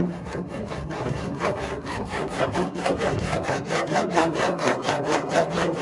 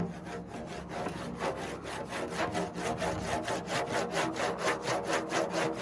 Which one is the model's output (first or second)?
first